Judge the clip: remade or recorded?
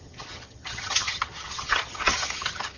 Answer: remade